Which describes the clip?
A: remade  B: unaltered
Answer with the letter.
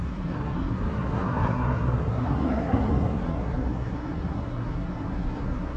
A